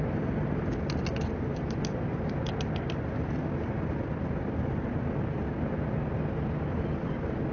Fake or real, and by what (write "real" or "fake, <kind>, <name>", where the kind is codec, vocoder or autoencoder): real